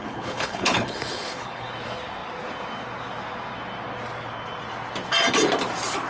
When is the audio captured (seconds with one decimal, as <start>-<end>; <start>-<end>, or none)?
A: 1.7-6.1